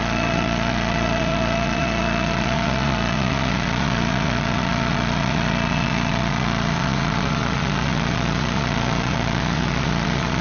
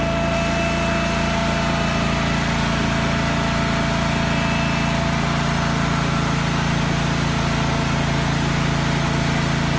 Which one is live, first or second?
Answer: second